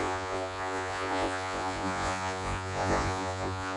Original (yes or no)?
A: no